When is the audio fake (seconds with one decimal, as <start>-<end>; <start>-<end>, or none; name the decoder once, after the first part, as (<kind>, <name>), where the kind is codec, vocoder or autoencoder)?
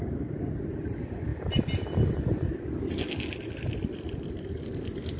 none